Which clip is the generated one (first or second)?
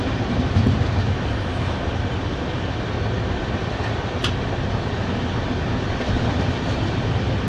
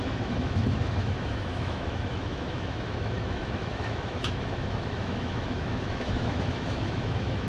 second